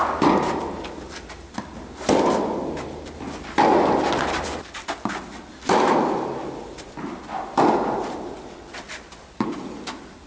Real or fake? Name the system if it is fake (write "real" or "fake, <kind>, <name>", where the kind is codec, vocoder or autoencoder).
real